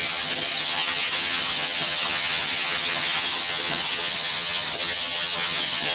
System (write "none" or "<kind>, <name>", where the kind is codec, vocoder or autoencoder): vocoder, HiFi-GAN